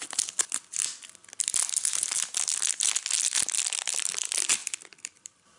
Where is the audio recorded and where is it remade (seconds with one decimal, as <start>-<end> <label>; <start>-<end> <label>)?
0.0-4.6 recorded; 4.6-5.6 remade